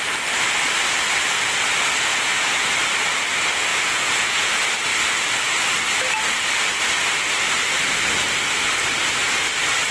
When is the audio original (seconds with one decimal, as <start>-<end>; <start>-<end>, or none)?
0.0-2.1; 2.7-3.7; 4.5-9.9